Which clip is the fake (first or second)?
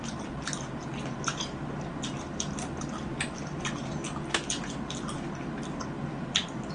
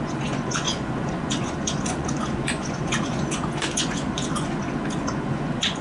second